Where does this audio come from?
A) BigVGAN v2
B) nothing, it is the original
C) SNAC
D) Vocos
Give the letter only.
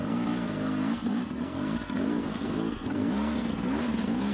C